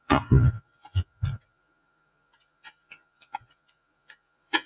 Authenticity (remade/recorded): remade